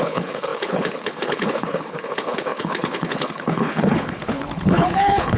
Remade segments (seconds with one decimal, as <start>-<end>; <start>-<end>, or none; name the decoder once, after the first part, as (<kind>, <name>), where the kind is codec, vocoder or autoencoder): 0.0-5.4 (codec, HILCodec)